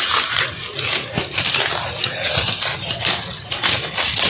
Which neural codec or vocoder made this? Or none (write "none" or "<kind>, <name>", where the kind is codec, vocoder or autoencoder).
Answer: none